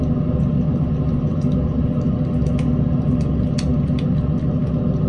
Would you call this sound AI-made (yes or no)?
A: no